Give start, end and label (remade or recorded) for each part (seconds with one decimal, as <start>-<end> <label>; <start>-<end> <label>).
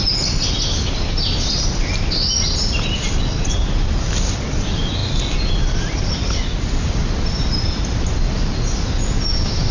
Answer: 0.0-9.7 recorded